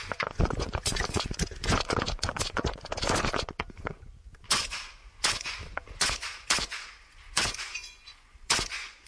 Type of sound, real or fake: fake